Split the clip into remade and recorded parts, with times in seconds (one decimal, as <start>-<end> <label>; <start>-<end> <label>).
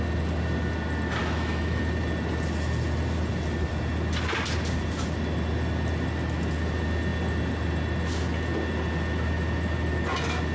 0.0-1.2 recorded; 1.2-1.8 remade; 1.8-10.5 recorded